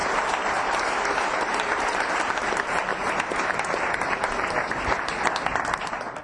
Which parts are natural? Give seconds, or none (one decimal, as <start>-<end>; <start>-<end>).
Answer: 2.1-2.9; 4.5-6.2